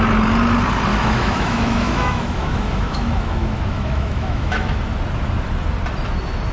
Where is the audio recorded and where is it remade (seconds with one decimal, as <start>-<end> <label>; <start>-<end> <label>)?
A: 0.0-0.9 recorded; 0.9-4.8 remade; 4.8-6.5 recorded